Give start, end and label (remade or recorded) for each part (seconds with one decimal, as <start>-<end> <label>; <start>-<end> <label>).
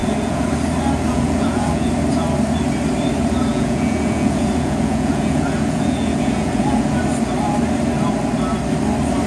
0.0-0.5 remade; 0.5-1.1 recorded; 1.1-1.9 remade; 1.9-3.5 recorded; 3.5-7.0 remade; 7.0-9.3 recorded